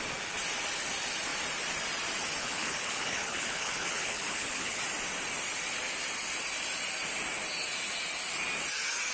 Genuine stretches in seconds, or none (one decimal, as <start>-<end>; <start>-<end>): 0.0-2.4; 4.8-9.1